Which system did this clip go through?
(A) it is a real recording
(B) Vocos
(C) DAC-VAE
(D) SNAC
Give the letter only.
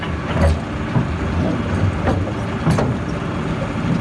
A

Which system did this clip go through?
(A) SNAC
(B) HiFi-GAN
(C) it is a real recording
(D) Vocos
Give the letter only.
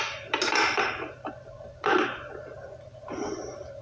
C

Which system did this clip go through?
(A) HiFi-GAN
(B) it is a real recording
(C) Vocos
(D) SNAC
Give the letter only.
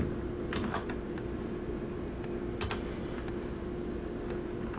B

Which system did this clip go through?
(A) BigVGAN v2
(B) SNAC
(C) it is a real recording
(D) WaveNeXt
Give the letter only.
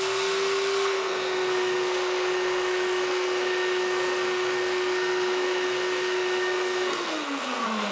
B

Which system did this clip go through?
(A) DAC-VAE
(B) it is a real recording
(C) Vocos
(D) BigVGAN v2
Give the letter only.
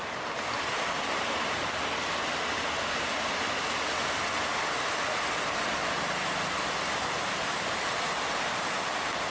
B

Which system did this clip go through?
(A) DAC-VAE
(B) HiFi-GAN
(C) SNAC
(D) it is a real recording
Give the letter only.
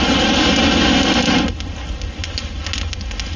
D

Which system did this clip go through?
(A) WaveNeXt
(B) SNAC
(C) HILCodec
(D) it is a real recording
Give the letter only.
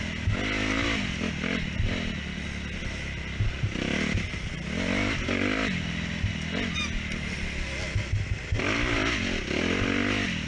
D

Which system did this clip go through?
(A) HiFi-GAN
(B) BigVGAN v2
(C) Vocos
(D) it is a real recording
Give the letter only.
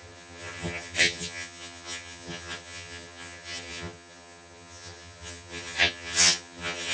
A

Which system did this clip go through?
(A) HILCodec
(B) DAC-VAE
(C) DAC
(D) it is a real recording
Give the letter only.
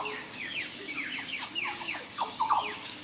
C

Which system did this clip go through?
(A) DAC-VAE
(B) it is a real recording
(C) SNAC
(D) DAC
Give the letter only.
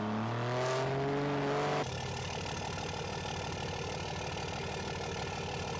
B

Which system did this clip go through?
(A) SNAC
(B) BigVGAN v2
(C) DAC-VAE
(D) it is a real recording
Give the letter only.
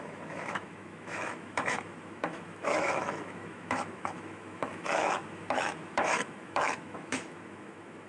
C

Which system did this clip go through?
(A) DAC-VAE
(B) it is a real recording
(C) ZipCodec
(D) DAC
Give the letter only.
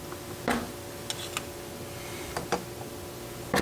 B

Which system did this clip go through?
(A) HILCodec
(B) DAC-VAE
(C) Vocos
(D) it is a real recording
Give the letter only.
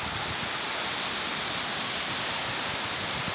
D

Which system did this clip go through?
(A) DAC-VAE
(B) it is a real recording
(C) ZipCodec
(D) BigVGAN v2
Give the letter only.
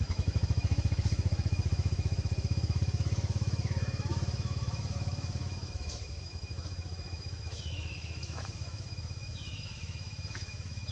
A